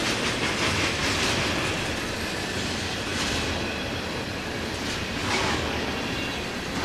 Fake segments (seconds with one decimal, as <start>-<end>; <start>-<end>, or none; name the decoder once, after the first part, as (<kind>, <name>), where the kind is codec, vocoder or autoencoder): 5.2-5.8 (codec, DAC)